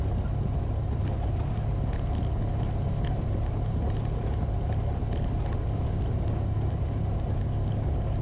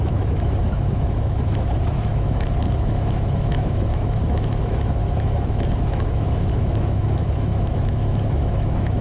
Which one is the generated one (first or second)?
second